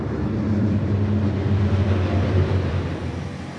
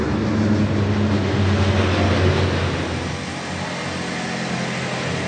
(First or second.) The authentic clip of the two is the second